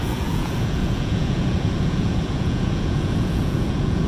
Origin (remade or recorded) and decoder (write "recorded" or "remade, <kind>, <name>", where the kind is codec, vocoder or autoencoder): remade, vocoder, Vocos